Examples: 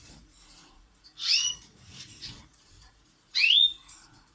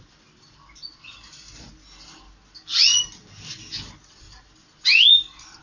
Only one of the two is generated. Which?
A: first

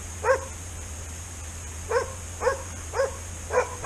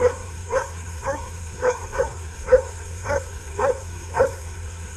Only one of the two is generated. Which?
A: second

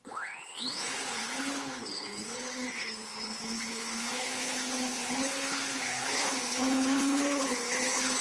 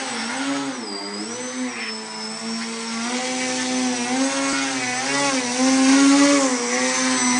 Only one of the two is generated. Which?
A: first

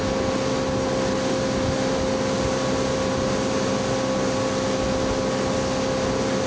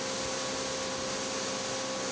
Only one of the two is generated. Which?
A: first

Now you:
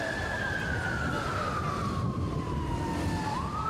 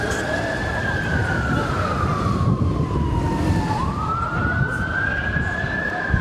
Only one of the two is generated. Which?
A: second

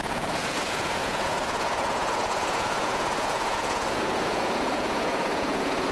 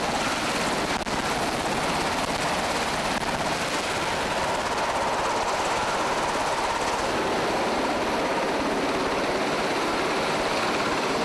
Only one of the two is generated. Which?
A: first